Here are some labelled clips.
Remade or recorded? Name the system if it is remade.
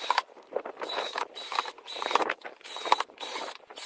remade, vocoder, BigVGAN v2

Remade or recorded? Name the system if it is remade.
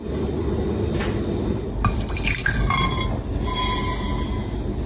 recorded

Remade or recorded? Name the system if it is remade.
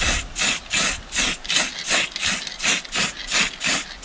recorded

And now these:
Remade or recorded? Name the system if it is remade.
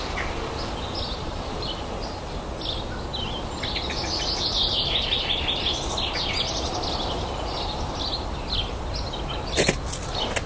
recorded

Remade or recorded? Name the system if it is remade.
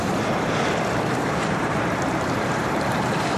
remade, vocoder, BigVGAN v2